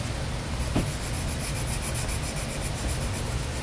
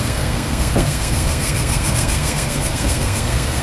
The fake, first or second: second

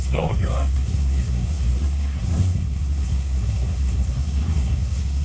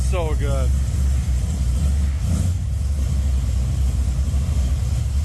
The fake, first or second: first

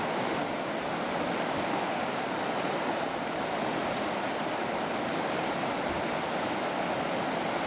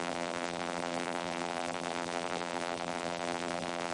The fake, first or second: second